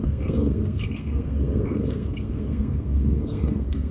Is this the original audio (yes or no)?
no